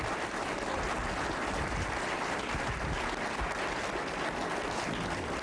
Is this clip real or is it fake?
real